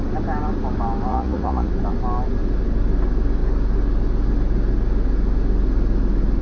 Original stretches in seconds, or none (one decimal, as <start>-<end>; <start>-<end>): 0.0-1.1; 1.7-6.4